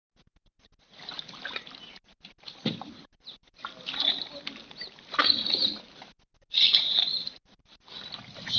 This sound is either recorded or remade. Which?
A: recorded